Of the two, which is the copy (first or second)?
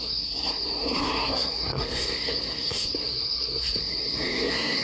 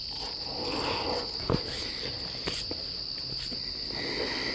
first